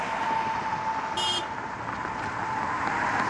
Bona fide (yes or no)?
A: yes